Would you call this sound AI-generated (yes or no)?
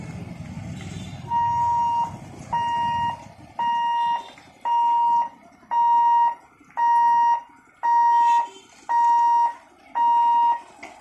no